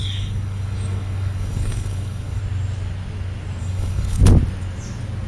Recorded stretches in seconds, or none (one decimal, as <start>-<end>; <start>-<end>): 2.4-3.6; 4.2-5.3